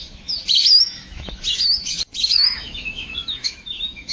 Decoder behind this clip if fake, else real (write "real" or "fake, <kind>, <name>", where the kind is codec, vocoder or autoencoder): fake, autoencoder, DAC-VAE